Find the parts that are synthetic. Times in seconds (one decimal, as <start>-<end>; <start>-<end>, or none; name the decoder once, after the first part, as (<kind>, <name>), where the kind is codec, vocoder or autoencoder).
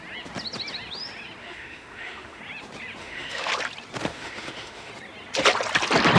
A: 1.4-2.4 (autoencoder, DAC-VAE); 3.0-3.5; 4.1-4.9